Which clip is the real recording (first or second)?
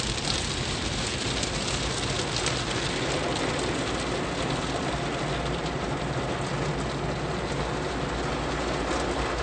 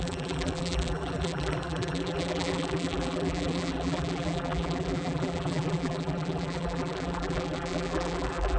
first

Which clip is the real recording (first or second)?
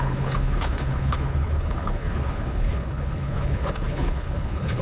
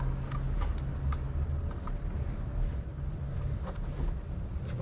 second